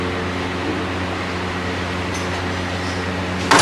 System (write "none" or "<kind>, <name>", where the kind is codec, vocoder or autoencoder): none